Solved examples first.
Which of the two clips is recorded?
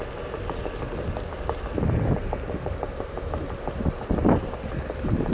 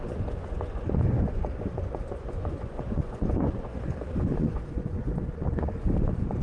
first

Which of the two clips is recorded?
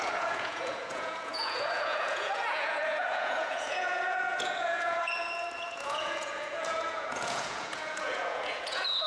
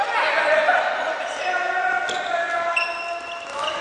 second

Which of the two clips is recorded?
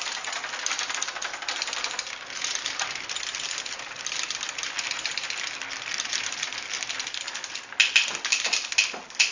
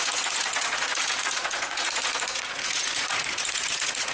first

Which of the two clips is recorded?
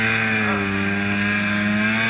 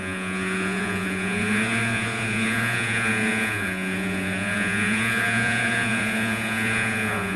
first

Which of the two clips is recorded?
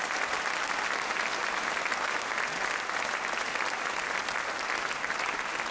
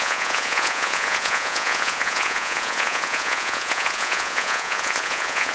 first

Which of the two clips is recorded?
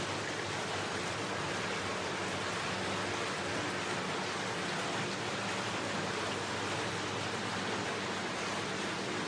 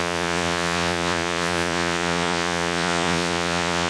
first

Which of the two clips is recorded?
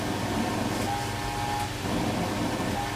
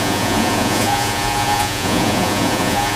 first